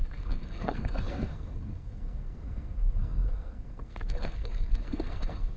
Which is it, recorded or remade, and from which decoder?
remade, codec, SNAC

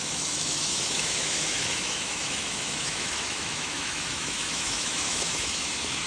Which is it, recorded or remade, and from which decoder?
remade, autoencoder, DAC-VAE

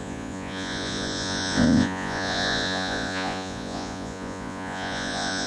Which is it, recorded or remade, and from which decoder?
remade, vocoder, Vocos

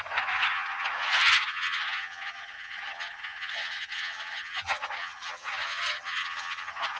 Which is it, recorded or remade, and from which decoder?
remade, vocoder, HiFi-GAN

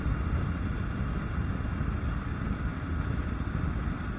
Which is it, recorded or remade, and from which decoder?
recorded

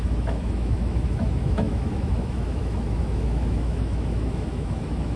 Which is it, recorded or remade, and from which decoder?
remade, autoencoder, DAC-VAE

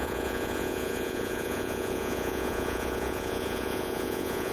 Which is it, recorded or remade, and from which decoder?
remade, vocoder, Vocos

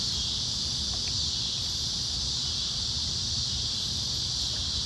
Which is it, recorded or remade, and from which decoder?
recorded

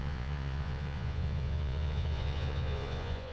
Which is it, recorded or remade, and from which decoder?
remade, vocoder, Vocos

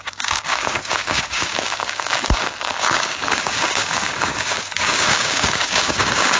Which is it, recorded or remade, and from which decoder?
remade, codec, DAC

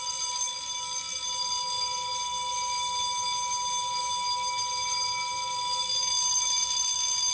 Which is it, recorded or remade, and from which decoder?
recorded